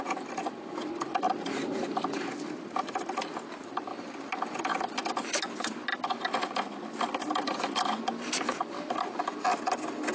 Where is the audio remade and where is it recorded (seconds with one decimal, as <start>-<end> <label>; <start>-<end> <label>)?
0.0-10.1 recorded